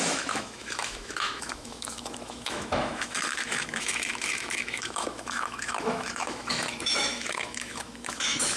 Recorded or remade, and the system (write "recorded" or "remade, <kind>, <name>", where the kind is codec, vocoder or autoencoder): remade, autoencoder, DAC-VAE